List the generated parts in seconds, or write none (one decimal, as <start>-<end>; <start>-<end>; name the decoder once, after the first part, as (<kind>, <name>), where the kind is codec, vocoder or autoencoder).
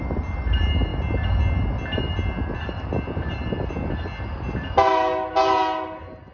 none